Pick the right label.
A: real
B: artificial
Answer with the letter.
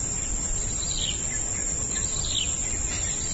A